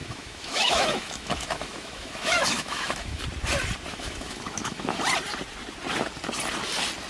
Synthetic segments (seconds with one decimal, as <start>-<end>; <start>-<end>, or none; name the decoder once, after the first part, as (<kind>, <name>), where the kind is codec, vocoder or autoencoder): 0.0-3.2 (autoencoder, DAC-VAE); 3.9-5.0

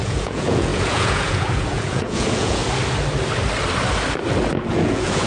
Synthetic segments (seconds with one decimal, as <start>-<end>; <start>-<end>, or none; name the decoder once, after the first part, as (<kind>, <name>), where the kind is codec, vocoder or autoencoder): 0.0-2.6 (vocoder, Vocos); 4.7-5.3

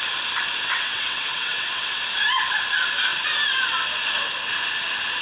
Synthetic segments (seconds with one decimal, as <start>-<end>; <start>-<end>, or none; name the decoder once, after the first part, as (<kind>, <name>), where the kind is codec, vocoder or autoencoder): 0.7-2.0 (vocoder, WaveNeXt)